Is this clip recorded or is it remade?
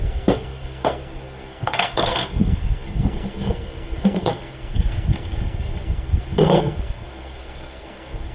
remade